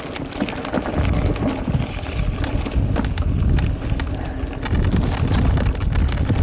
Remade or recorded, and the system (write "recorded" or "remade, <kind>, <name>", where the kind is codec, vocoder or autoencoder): recorded